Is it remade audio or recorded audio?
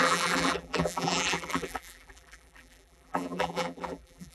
remade